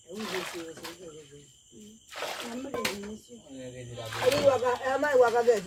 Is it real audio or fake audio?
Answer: real